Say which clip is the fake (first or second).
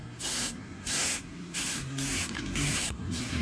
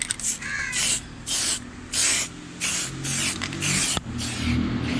first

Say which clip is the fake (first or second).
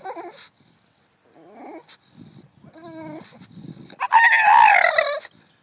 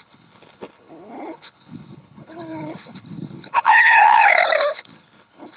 second